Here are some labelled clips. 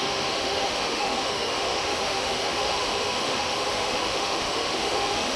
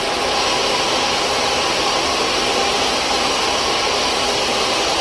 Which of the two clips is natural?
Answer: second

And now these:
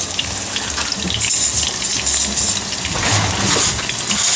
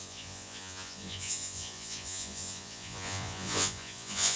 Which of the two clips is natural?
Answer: first